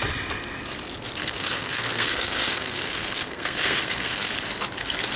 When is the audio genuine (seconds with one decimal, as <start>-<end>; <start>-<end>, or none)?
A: 0.0-1.2; 4.3-5.2

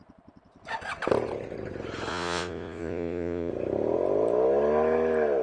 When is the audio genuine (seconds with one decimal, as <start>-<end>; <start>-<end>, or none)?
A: 0.0-2.1; 3.5-5.4

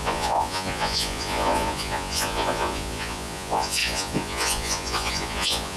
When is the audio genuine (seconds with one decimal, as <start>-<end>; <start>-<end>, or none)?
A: none

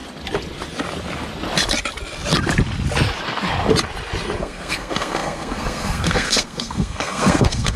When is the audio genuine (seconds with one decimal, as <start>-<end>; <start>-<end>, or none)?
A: 0.0-4.4